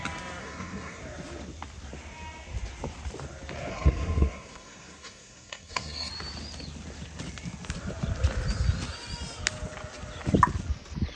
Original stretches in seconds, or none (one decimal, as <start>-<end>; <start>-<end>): 0.0-0.4; 1.0-3.7; 6.1-11.2